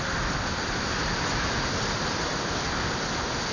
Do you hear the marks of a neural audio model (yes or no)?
no